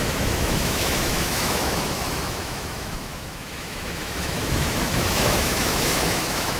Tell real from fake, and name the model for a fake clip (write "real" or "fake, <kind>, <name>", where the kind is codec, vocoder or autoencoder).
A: fake, autoencoder, DAC-VAE